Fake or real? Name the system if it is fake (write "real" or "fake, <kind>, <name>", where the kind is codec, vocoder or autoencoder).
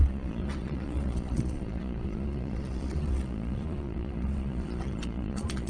fake, vocoder, Vocos